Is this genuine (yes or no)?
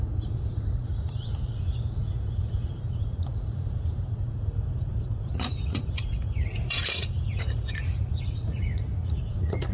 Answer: no